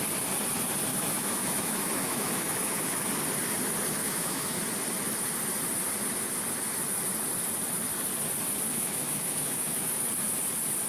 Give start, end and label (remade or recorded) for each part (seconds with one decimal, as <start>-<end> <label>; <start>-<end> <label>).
0.0-0.9 recorded; 0.9-3.1 remade; 3.1-4.0 recorded; 4.0-4.6 remade; 4.6-8.7 recorded; 8.7-10.0 remade; 10.0-10.9 recorded